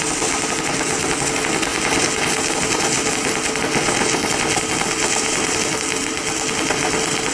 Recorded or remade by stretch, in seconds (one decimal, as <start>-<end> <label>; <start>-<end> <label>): 0.0-7.3 recorded